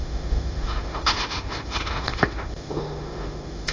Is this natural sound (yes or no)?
no